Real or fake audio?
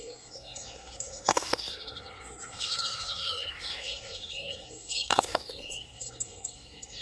fake